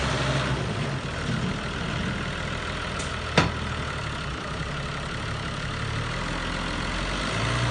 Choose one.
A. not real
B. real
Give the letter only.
B